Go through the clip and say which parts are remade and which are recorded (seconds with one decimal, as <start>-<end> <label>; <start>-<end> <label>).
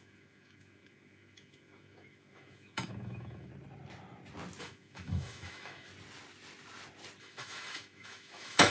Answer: 0.0-3.5 remade; 3.5-4.6 recorded; 4.6-5.9 remade; 5.9-7.2 recorded; 7.2-8.7 remade